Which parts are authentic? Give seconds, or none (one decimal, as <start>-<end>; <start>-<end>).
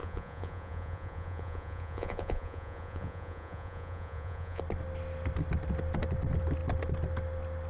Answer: 4.6-7.7